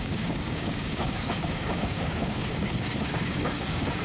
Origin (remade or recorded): remade